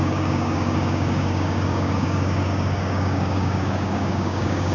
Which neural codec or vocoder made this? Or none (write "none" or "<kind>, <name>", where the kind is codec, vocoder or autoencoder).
codec, DAC